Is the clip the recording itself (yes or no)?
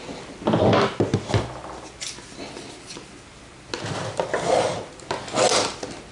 yes